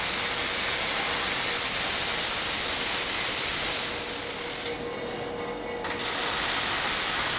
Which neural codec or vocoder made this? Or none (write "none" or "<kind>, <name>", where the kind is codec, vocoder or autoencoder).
none